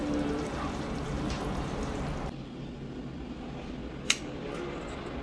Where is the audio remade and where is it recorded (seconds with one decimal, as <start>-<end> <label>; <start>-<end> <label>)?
0.0-2.0 remade; 2.0-5.2 recorded